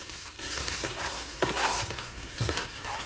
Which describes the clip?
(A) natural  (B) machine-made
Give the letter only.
B